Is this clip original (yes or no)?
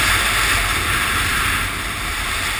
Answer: yes